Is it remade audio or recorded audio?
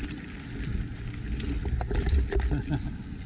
recorded